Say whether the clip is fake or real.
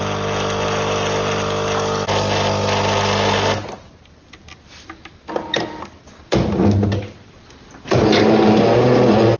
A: real